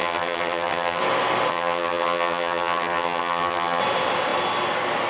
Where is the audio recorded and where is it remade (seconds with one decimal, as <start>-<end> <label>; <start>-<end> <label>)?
0.0-1.0 remade; 1.0-1.5 recorded; 1.5-3.8 remade; 3.8-5.1 recorded

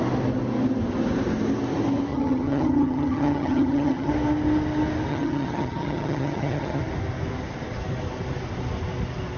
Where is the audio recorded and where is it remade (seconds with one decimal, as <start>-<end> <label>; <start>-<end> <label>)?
0.0-2.1 recorded; 2.1-4.1 remade; 4.1-5.1 recorded; 5.1-6.8 remade; 6.8-9.4 recorded

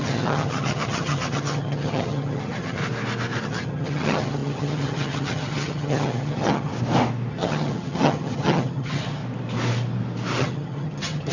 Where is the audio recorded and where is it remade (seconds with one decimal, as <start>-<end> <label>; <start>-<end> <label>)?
0.0-2.8 remade; 2.8-3.4 recorded; 3.4-6.7 remade; 6.7-7.3 recorded; 7.3-9.2 remade; 9.2-10.4 recorded; 10.4-11.3 remade